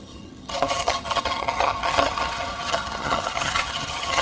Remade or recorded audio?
remade